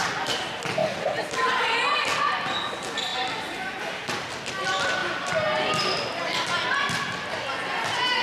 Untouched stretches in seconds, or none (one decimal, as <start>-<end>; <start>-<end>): 0.0-8.2